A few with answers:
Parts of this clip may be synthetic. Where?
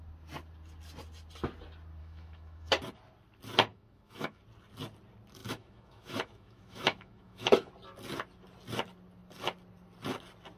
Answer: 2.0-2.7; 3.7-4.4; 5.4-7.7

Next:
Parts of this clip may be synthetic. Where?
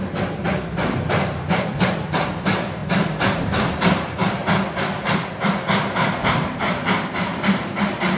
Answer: 0.0-4.4; 5.8-8.2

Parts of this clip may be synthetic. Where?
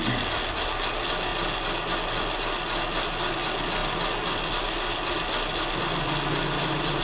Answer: none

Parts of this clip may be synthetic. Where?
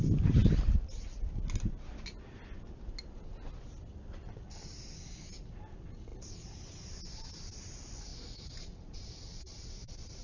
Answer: none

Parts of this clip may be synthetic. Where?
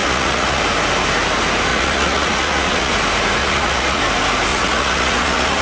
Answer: 0.0-0.6; 1.7-2.9; 3.4-4.0; 4.5-5.6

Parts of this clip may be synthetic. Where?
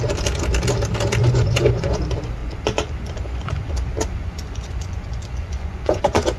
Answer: 1.2-2.0; 2.4-3.7; 4.2-6.4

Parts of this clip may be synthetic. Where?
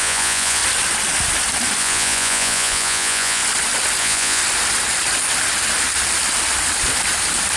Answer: 0.0-0.6; 1.8-3.4; 4.0-4.4